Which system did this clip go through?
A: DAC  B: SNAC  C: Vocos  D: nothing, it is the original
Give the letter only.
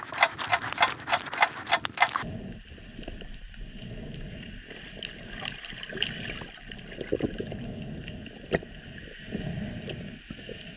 D